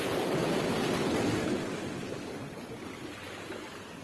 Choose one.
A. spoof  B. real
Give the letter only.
B